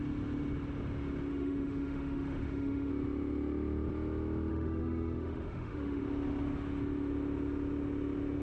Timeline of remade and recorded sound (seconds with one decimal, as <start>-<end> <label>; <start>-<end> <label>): 0.0-1.3 recorded; 1.3-2.9 remade; 2.9-4.5 recorded; 4.5-6.0 remade; 6.0-8.4 recorded